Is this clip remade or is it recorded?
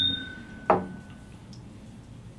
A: recorded